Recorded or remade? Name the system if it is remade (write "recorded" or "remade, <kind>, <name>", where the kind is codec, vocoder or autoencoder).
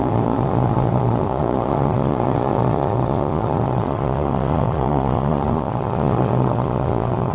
remade, vocoder, Vocos